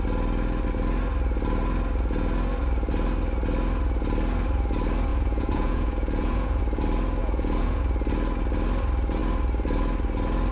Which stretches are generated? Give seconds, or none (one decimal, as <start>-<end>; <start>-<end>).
5.1-6.6; 7.2-7.8